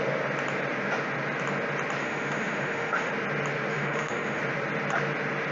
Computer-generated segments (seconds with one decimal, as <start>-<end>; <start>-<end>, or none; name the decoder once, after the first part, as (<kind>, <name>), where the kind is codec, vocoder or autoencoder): 2.0-3.1 (autoencoder, DAC-VAE); 3.7-4.4